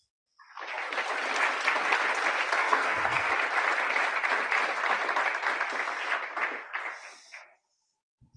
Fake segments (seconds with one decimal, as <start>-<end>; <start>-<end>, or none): 2.6-3.3